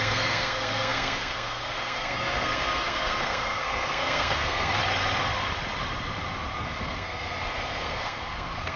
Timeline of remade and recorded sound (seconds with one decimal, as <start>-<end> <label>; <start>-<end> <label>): 0.0-4.8 remade; 4.8-6.6 recorded; 6.6-8.8 remade